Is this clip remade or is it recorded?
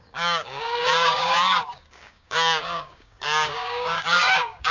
remade